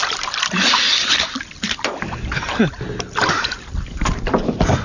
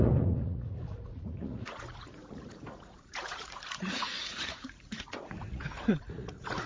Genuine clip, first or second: first